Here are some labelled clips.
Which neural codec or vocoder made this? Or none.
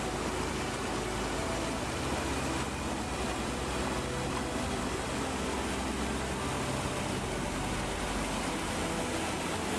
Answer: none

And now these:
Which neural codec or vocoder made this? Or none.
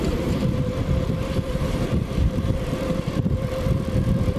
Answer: vocoder, BigVGAN v2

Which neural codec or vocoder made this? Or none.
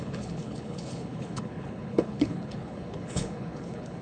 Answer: codec, HILCodec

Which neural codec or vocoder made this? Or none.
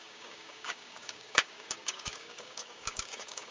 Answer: codec, DAC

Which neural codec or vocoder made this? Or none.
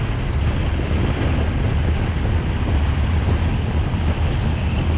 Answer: none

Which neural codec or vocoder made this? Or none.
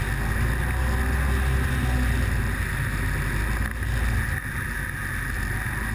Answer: none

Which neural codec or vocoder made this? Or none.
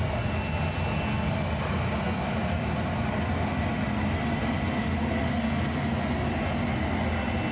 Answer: none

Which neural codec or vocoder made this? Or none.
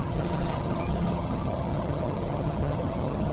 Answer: vocoder, HiFi-GAN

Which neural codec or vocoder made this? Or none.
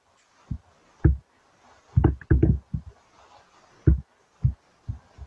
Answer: none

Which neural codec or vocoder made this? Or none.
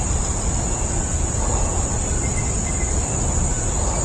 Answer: none